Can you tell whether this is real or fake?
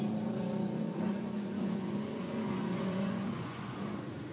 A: fake